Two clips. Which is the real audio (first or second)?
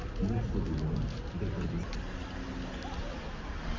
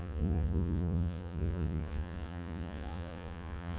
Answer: first